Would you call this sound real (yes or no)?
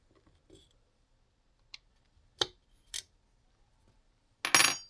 yes